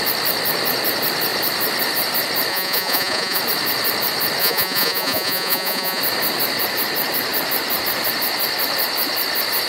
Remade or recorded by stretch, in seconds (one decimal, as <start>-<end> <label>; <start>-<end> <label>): 0.0-2.5 recorded; 2.5-3.4 remade; 3.4-4.4 recorded; 4.4-6.0 remade; 6.0-9.7 recorded